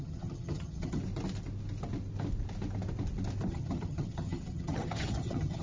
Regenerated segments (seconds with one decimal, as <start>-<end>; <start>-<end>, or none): 0.0-1.0; 3.5-5.6